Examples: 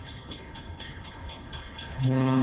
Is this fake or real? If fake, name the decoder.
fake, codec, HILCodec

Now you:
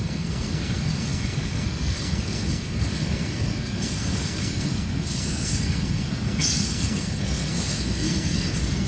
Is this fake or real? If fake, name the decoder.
fake, codec, SNAC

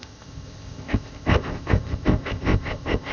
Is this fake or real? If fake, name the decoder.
fake, codec, ZipCodec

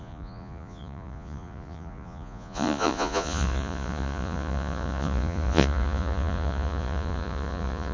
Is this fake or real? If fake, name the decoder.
fake, vocoder, Vocos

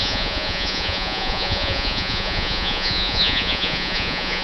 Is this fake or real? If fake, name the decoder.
fake, vocoder, Vocos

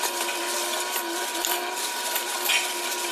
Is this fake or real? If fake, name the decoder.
real